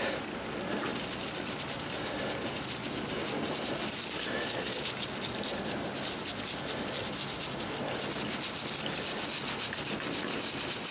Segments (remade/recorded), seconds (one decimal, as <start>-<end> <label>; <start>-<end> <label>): 0.0-10.9 recorded